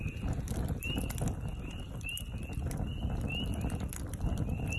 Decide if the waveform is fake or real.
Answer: real